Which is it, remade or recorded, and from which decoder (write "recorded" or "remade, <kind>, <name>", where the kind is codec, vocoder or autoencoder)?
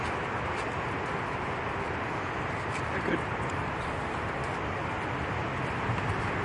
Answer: recorded